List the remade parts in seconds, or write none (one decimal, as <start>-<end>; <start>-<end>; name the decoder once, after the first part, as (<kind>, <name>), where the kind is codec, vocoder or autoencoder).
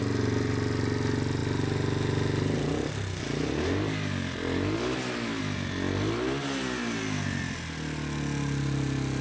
none